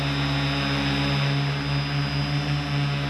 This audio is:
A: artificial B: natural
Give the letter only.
B